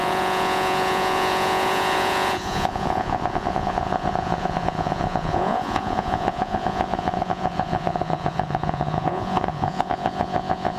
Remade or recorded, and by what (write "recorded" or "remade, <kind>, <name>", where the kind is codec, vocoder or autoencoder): remade, vocoder, Vocos